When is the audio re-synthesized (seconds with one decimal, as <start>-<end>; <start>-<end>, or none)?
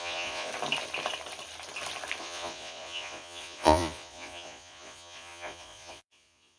0.0-0.5; 2.2-6.6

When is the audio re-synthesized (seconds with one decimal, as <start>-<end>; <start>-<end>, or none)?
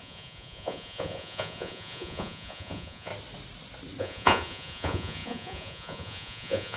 0.0-3.1; 4.0-6.8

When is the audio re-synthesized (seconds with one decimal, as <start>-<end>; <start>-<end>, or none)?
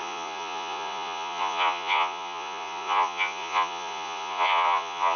0.0-5.2